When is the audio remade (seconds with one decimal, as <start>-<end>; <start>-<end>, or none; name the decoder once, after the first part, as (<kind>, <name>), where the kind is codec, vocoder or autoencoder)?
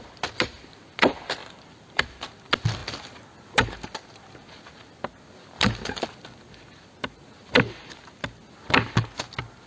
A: 1.4-2.0 (vocoder, BigVGAN v2)